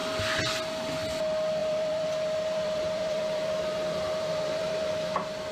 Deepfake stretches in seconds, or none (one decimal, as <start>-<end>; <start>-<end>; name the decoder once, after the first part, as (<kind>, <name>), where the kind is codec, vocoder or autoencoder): 1.6-4.9 (vocoder, BigVGAN v2)